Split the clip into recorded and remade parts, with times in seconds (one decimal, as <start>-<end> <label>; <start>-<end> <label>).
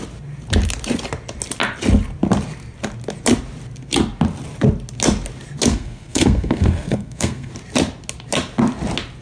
0.0-5.7 recorded; 5.7-7.5 remade; 7.5-9.2 recorded